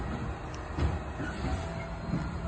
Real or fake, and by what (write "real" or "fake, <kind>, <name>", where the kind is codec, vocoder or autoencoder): real